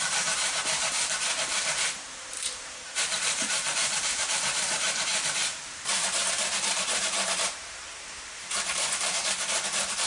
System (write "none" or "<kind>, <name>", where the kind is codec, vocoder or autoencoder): vocoder, BigVGAN v2